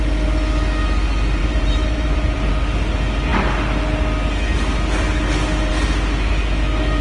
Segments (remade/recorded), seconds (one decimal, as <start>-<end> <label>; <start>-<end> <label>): 0.0-1.4 recorded; 1.4-2.5 remade; 2.5-7.0 recorded